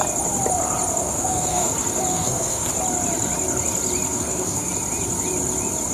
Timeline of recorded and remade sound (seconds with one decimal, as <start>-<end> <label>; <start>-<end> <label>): 0.0-1.0 recorded; 1.0-1.7 remade; 1.7-2.1 recorded; 2.1-2.7 remade; 2.7-4.1 recorded; 4.1-4.7 remade; 4.7-5.9 recorded